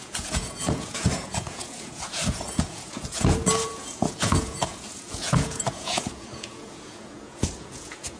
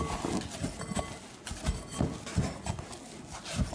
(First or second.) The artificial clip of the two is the first